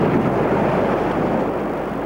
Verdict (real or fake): real